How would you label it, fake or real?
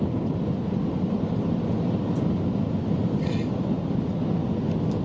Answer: real